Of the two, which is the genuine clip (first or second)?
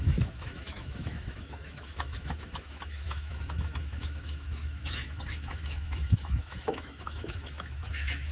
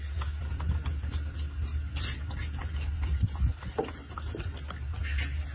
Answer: second